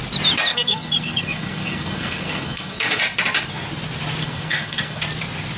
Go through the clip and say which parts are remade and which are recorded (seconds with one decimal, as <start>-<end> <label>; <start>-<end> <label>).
0.0-0.5 recorded; 0.5-3.0 remade; 3.0-4.2 recorded; 4.2-5.0 remade; 5.0-5.6 recorded